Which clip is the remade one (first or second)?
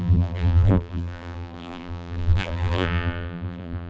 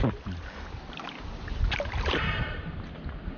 first